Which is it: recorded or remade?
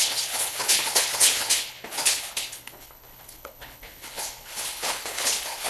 remade